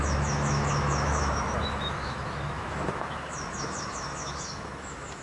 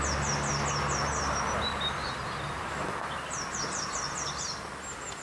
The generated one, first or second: first